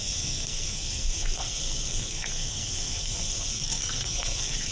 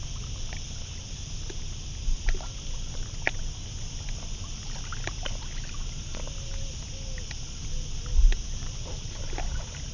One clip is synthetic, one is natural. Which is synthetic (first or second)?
first